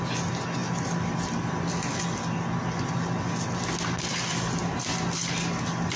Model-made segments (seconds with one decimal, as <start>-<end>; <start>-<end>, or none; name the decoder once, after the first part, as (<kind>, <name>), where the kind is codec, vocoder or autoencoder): none